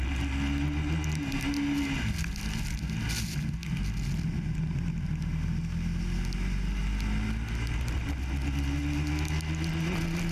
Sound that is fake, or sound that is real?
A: real